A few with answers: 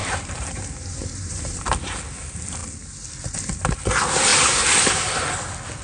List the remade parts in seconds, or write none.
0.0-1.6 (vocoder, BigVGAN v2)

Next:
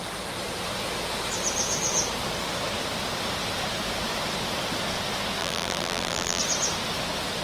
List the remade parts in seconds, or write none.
5.4-6.4 (vocoder, BigVGAN v2)

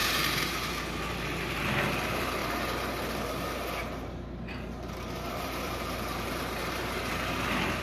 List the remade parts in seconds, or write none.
0.0-0.7 (vocoder, BigVGAN v2); 2.4-7.1